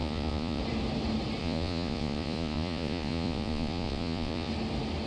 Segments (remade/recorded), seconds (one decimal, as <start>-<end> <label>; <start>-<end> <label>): 0.0-0.6 remade; 0.6-1.4 recorded; 1.4-4.5 remade; 4.5-5.1 recorded